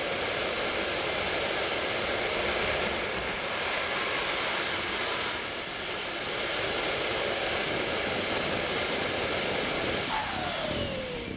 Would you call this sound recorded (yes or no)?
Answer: yes